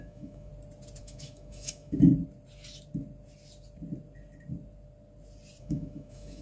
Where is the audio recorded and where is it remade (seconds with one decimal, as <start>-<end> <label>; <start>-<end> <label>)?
0.0-0.5 remade; 0.5-1.0 recorded; 1.0-2.1 remade; 2.1-5.6 recorded; 5.6-6.4 remade